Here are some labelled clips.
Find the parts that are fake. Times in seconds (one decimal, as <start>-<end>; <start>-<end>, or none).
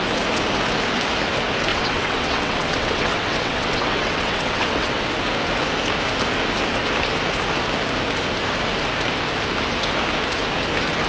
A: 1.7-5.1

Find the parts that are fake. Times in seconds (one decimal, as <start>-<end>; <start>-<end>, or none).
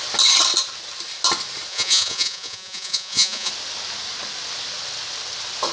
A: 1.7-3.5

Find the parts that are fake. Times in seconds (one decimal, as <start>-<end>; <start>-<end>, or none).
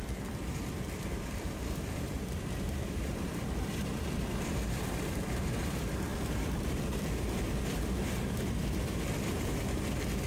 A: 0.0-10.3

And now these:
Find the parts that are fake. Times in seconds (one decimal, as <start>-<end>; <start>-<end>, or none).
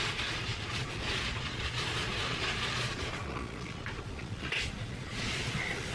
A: 0.0-5.9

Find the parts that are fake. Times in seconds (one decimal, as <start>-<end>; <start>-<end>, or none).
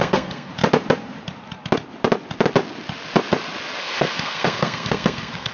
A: 0.0-0.5; 3.8-5.5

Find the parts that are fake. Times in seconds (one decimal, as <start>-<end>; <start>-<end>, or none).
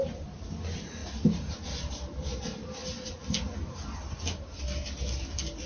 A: none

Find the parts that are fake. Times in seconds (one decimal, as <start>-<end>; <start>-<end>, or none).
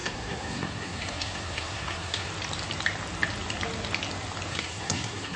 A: 0.0-2.3; 4.5-5.4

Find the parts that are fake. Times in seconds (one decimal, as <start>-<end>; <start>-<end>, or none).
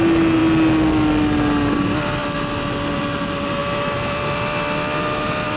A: none